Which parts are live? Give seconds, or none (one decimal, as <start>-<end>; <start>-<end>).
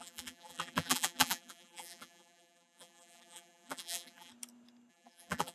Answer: 4.3-4.9